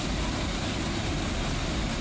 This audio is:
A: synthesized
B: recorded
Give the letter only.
B